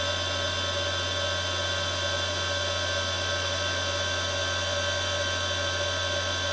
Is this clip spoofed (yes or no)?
no